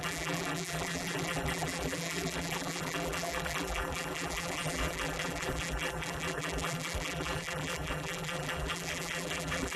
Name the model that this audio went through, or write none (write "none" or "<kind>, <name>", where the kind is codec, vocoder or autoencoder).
vocoder, BigVGAN v2